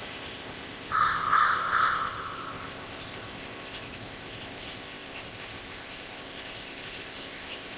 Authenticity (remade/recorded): remade